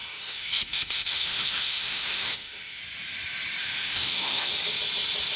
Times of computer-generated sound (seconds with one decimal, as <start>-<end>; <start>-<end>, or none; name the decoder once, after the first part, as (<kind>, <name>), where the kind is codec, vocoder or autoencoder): 0.0-2.8 (autoencoder, DAC-VAE); 3.6-4.5